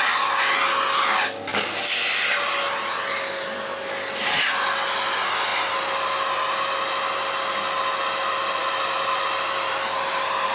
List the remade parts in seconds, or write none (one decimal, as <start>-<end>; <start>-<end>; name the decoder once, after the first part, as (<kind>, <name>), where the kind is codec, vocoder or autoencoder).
8.6-9.7 (vocoder, BigVGAN v2)